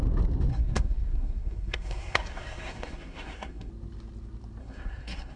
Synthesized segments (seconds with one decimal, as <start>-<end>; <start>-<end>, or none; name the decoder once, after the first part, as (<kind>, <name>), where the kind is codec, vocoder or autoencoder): 0.5-3.7 (codec, SNAC); 4.6-5.4